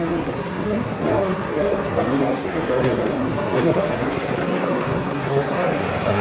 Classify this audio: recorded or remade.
remade